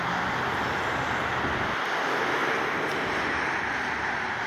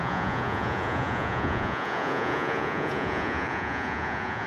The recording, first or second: first